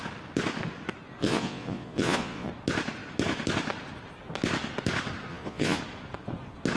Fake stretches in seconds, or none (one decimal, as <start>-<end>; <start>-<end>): 1.2-2.5; 5.3-5.8